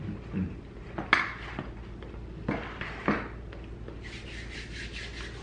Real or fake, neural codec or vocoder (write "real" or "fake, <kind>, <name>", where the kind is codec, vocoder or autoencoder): real